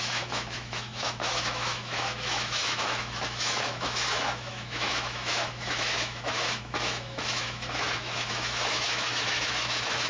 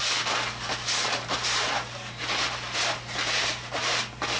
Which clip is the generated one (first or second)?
first